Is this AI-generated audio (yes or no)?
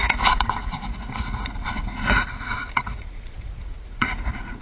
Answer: yes